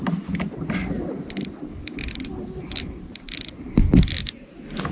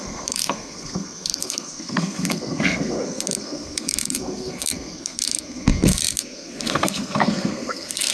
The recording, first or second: first